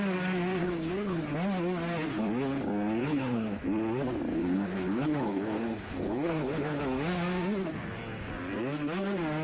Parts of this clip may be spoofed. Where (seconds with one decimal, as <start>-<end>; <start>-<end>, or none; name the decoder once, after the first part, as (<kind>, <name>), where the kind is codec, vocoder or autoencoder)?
0.6-1.2 (codec, HILCodec); 3.0-3.6; 4.4-6.8